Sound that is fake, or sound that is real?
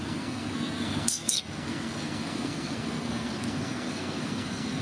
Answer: fake